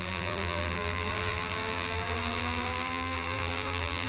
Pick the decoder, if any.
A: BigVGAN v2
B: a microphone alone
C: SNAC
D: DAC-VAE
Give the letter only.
A